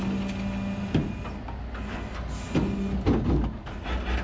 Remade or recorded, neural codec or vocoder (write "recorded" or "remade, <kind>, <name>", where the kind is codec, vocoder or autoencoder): recorded